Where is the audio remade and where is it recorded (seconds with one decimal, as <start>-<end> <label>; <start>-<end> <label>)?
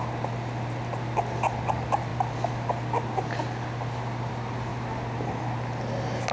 0.0-6.3 recorded